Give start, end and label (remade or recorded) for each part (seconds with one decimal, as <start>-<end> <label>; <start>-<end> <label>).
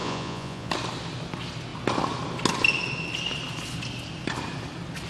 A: 0.0-0.7 remade; 0.7-5.1 recorded